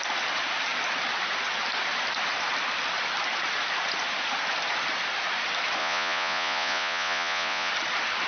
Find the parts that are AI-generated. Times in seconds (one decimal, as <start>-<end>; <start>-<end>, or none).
5.8-7.7